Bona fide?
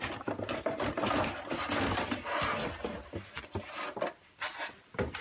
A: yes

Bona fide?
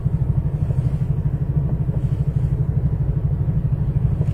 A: yes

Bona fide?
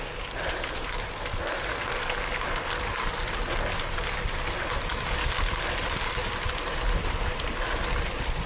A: yes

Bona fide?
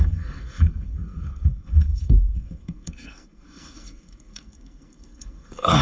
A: no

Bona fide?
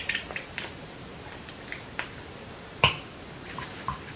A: yes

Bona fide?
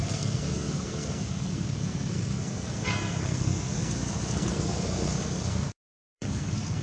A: no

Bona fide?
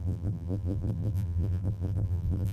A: no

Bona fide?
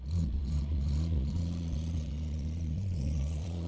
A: no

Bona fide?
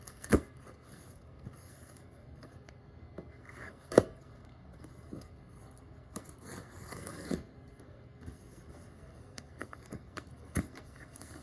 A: no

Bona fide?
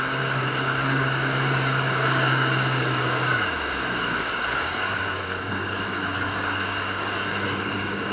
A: no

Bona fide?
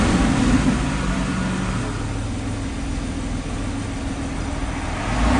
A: yes